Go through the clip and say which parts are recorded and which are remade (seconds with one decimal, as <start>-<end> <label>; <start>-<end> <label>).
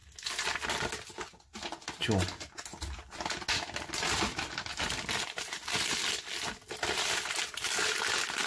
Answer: 0.0-8.5 recorded